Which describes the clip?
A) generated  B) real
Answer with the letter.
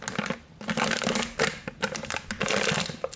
B